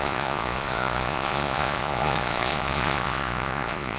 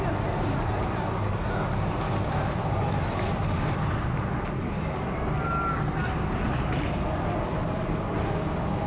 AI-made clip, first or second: first